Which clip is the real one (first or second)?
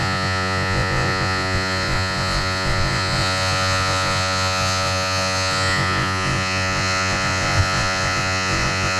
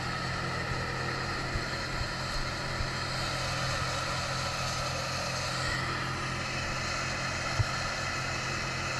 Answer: second